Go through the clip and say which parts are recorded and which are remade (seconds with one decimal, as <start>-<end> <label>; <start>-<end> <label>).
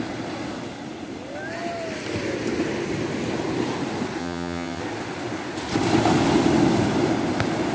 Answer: 0.0-4.2 recorded; 4.2-4.8 remade; 4.8-7.7 recorded